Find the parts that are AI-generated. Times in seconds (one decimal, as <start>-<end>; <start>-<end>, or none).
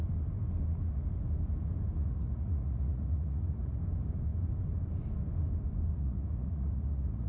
2.0-3.8; 5.9-7.3